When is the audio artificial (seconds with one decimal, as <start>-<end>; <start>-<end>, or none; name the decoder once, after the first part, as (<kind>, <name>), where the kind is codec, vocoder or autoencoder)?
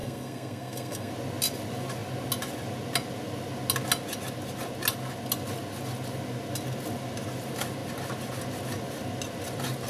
0.0-1.1 (codec, SNAC)